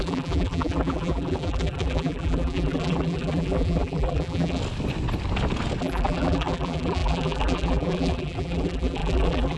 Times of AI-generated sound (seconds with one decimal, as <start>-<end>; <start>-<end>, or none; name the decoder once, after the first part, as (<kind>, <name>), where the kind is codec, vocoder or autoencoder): 0.0-4.6 (vocoder, BigVGAN v2); 5.8-9.6